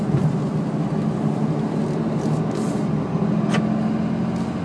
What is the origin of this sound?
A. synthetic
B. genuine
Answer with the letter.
B